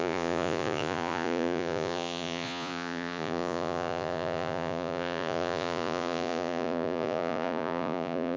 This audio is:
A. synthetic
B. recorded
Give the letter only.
A